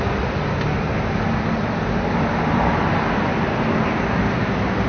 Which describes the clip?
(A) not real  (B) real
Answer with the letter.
B